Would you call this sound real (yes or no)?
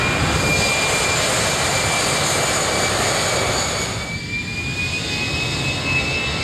yes